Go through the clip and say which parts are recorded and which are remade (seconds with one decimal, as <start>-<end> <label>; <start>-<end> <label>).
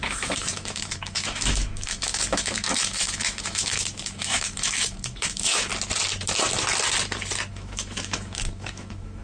0.0-5.7 remade; 5.7-7.5 recorded; 7.5-9.2 remade